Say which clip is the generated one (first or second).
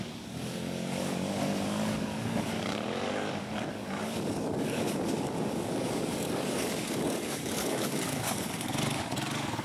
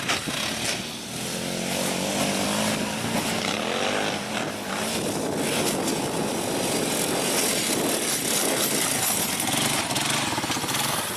first